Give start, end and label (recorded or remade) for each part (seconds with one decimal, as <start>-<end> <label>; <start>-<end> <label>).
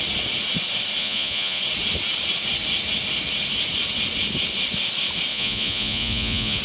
0.0-1.0 recorded; 1.0-1.6 remade; 1.6-5.3 recorded; 5.3-6.6 remade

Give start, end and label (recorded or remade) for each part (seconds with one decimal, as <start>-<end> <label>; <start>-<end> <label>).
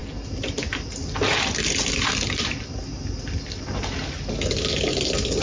0.0-5.4 recorded